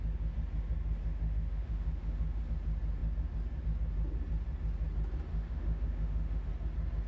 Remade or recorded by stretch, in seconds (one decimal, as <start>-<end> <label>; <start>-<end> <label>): 0.0-1.0 recorded; 1.0-2.4 remade; 2.4-5.3 recorded; 5.3-6.5 remade; 6.5-7.1 recorded